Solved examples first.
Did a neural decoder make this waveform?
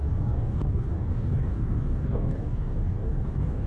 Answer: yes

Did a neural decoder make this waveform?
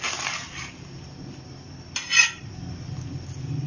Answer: no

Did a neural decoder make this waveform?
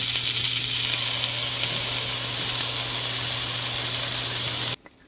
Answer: no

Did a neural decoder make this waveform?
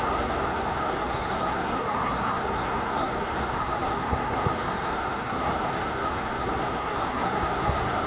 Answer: yes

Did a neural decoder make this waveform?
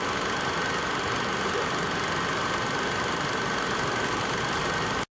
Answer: no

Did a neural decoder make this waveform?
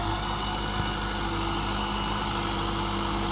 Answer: no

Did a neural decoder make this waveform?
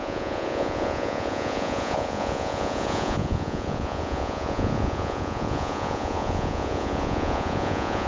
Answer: yes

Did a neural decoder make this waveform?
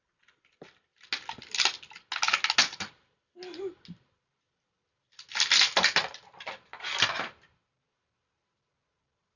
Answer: no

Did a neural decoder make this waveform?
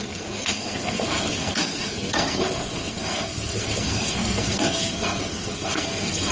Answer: yes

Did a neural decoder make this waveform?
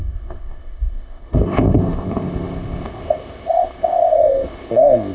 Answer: yes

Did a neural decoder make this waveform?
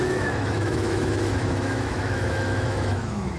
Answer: yes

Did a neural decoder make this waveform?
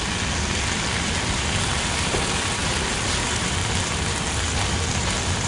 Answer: no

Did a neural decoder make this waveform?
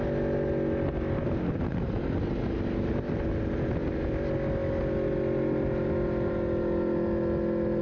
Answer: no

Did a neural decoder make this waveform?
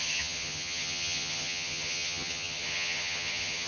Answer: yes